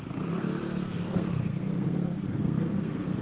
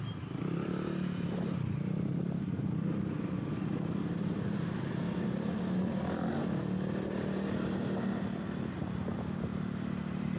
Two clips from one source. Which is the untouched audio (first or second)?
second